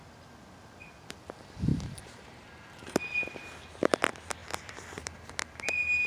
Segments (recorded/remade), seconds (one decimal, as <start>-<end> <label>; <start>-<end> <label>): 0.0-1.7 recorded; 1.7-3.0 remade; 3.0-4.4 recorded; 4.4-5.3 remade; 5.3-6.1 recorded